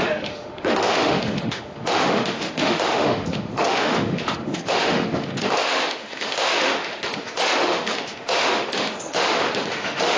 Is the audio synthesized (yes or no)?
yes